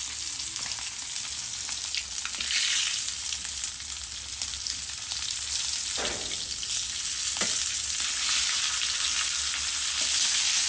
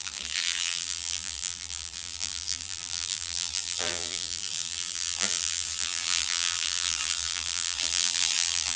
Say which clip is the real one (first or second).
first